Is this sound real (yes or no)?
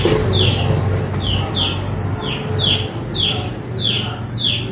yes